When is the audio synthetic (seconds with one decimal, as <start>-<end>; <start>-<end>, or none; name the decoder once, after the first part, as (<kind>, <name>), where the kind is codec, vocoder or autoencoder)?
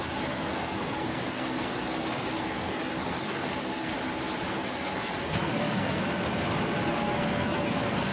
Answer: 0.0-3.9 (codec, SNAC); 4.5-6.0; 6.9-8.1